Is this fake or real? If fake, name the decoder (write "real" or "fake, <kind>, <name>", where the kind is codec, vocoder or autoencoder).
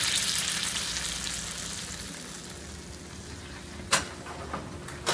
real